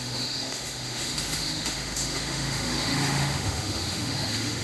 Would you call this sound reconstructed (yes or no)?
yes